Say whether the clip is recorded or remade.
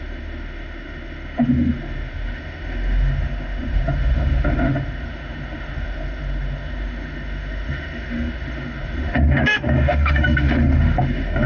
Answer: remade